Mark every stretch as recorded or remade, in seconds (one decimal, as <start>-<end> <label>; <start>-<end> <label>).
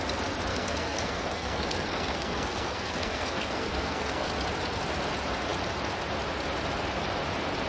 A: 0.0-0.5 recorded; 0.5-4.3 remade; 4.3-7.7 recorded